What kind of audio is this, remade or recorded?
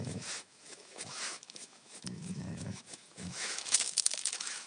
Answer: remade